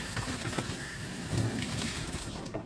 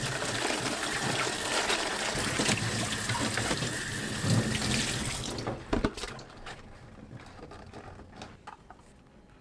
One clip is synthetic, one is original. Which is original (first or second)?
second